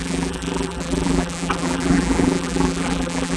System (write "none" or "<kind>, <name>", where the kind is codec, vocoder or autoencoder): vocoder, BigVGAN v2